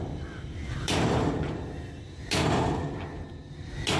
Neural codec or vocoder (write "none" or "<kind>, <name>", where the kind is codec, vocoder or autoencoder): vocoder, BigVGAN v2